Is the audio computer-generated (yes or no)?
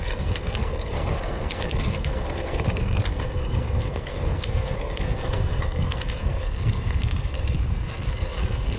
yes